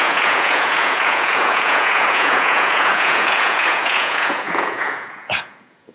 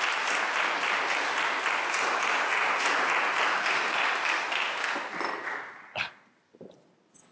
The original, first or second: second